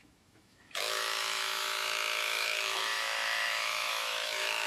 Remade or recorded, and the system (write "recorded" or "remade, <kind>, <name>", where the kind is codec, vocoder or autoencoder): remade, autoencoder, DAC-VAE